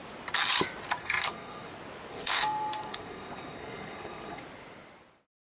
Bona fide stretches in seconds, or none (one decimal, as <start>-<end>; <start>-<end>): 0.0-1.0; 1.7-2.1; 4.4-5.5